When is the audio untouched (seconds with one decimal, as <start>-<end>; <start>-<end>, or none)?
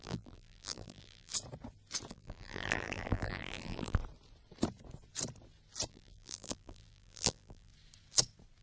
1.3-2.1; 4.0-5.9; 7.7-8.6